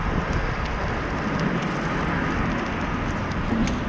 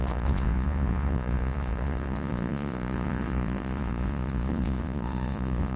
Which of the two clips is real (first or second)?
first